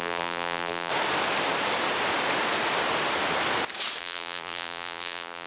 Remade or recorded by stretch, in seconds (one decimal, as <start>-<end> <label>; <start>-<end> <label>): 0.0-0.9 remade; 0.9-4.0 recorded; 4.0-5.5 remade